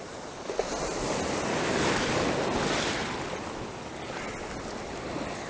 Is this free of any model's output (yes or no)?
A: yes